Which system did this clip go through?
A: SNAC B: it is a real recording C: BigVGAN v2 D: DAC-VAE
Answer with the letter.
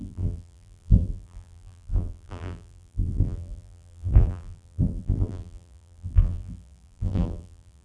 C